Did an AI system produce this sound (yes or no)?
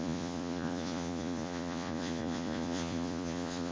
yes